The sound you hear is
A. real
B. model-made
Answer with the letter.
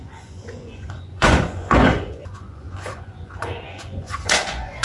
B